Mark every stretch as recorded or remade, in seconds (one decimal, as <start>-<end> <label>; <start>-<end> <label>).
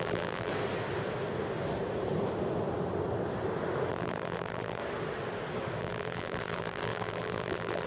0.0-0.5 remade; 0.5-3.9 recorded; 3.9-4.8 remade; 4.8-5.8 recorded; 5.8-7.9 remade